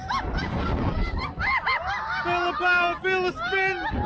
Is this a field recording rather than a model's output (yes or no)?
yes